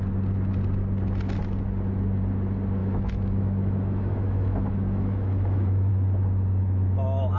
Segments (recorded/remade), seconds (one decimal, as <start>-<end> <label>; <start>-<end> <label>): 0.0-2.8 recorded; 2.8-5.9 remade; 5.9-7.4 recorded